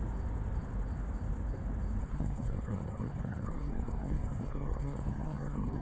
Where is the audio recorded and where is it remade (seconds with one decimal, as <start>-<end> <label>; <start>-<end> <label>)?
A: 0.0-2.0 recorded; 2.0-5.8 remade